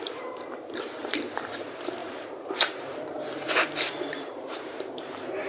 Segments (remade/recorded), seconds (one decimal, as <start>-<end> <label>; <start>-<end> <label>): 0.0-5.5 remade